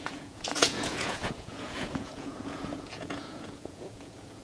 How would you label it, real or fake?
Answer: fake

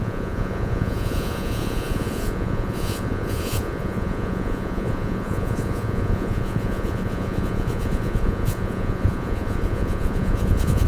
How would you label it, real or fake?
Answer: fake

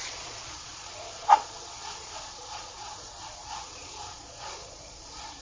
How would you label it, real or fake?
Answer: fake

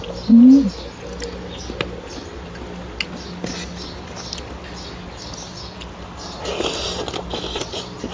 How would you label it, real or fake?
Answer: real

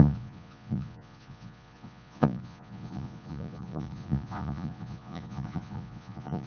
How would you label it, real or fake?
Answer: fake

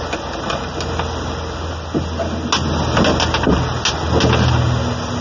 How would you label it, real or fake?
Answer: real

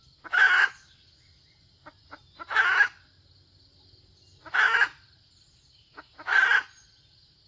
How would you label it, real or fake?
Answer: real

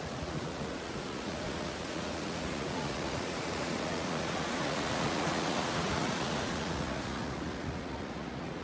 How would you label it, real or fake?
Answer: fake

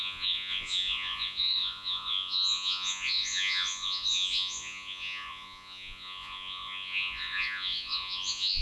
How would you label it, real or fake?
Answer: fake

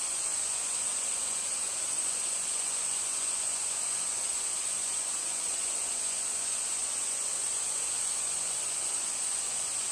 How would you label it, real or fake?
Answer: fake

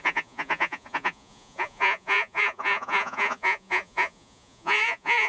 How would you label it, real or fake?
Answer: fake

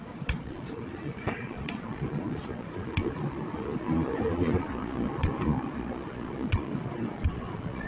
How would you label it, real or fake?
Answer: fake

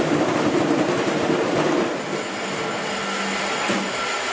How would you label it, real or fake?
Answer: real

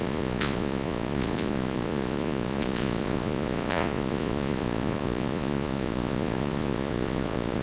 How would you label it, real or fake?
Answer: fake